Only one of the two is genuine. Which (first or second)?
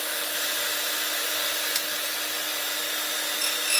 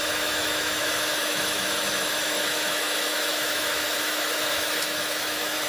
first